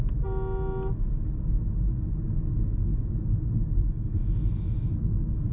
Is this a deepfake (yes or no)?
no